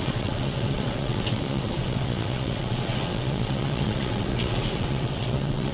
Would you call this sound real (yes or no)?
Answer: no